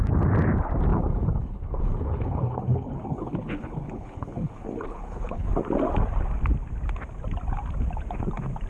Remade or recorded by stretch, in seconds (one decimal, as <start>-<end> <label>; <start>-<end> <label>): 0.0-0.9 recorded; 0.9-5.5 remade; 5.5-8.7 recorded